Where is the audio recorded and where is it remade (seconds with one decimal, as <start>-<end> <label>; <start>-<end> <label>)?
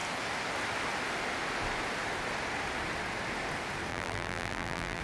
0.0-3.9 recorded; 3.9-5.0 remade